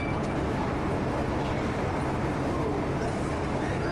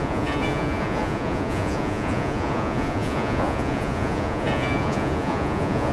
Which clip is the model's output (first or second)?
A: second